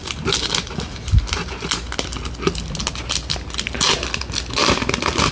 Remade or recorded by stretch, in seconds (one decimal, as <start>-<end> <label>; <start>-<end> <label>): 0.0-5.3 recorded